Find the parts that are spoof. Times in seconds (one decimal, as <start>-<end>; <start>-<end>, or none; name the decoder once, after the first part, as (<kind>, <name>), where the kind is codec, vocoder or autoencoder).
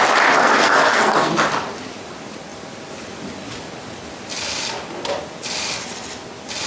0.4-1.3 (codec, SNAC)